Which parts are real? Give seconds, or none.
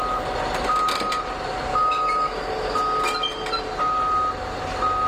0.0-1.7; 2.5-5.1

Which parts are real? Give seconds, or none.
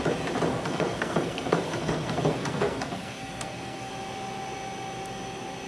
0.0-0.5; 3.9-5.7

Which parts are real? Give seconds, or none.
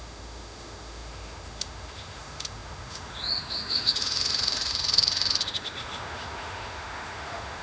none